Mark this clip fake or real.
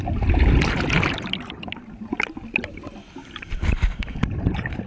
real